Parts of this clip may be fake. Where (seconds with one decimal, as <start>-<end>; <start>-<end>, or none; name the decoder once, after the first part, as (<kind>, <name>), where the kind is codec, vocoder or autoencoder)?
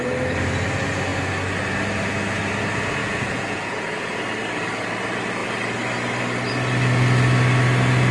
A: 3.0-4.2 (vocoder, Vocos)